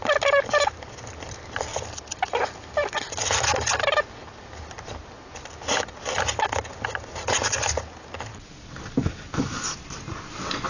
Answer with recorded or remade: recorded